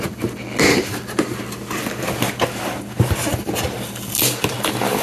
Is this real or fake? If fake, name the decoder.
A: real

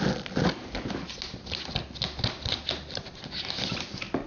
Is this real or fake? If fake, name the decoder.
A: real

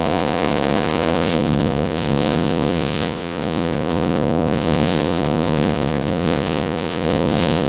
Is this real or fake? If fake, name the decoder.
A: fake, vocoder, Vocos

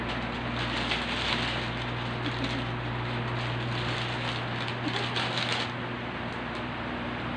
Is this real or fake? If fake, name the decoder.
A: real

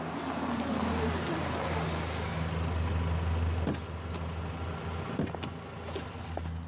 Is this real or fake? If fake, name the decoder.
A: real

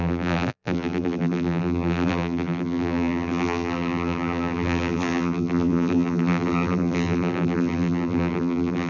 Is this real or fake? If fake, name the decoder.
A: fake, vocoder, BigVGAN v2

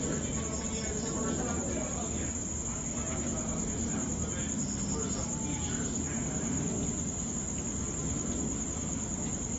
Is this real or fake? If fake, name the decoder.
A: real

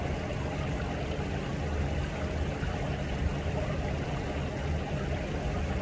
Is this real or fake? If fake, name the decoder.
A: real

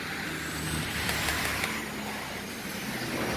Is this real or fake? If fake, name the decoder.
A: real